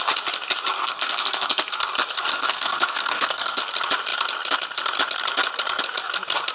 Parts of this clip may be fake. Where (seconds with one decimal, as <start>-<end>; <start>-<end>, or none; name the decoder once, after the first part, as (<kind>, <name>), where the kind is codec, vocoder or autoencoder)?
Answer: 0.8-1.8 (codec, SNAC); 2.3-3.6